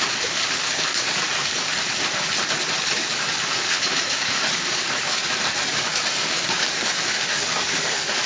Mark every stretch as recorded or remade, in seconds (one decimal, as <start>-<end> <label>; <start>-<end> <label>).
0.0-1.7 remade; 1.7-2.8 recorded; 2.8-5.2 remade; 5.2-5.7 recorded; 5.7-8.3 remade